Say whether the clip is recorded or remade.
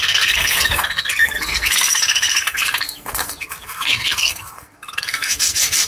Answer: remade